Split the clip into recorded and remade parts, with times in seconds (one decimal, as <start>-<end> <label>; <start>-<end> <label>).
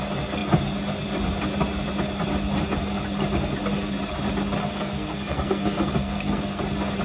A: 0.0-4.6 recorded; 4.6-6.6 remade; 6.6-7.0 recorded